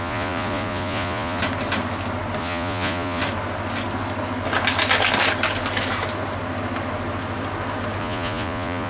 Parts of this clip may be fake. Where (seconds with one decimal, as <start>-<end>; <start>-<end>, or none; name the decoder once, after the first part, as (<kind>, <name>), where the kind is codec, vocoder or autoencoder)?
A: 0.0-1.4 (vocoder, Vocos); 2.4-3.2; 8.0-8.9